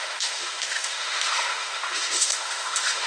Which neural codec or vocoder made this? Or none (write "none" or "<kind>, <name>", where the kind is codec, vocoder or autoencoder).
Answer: autoencoder, DAC-VAE